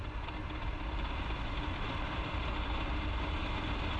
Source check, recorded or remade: recorded